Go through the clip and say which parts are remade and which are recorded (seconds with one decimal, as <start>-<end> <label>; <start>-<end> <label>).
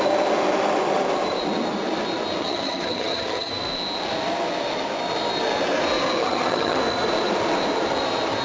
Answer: 0.0-2.4 recorded; 2.4-3.5 remade; 3.5-6.2 recorded; 6.2-6.8 remade; 6.8-8.4 recorded